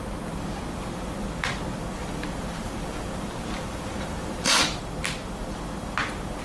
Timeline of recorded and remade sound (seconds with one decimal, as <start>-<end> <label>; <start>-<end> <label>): 0.0-1.9 recorded; 1.9-4.8 remade; 4.8-6.4 recorded